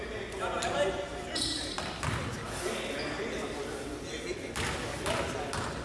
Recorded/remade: recorded